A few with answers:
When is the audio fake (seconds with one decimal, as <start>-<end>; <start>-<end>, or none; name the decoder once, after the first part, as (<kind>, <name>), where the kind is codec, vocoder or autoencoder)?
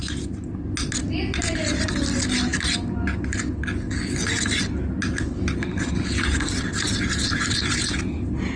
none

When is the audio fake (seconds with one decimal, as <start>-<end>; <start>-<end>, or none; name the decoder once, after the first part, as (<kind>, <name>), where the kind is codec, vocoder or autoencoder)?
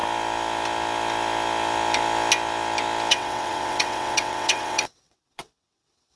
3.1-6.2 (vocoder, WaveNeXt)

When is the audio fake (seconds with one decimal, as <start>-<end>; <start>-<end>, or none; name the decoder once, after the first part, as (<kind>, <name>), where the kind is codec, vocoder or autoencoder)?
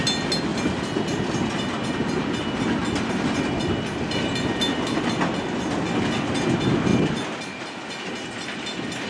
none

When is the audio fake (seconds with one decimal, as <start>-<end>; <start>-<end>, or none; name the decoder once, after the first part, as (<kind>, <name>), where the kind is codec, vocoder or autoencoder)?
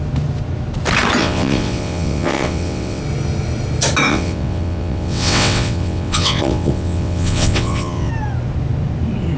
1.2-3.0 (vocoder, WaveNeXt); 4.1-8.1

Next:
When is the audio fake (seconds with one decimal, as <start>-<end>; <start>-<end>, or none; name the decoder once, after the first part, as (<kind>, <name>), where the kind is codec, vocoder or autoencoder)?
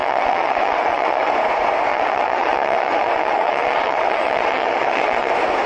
0.0-1.3 (vocoder, WaveNeXt); 1.9-5.3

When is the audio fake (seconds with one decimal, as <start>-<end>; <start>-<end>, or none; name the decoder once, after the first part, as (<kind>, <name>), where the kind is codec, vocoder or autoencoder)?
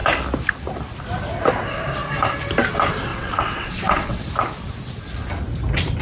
3.1-4.2 (vocoder, WaveNeXt)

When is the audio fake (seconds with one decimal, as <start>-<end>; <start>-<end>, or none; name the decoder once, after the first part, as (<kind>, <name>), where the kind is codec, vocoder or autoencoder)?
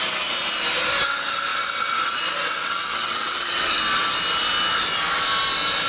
2.6-3.8 (vocoder, WaveNeXt)